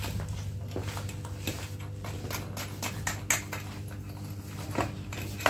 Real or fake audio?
real